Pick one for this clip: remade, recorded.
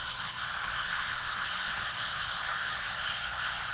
remade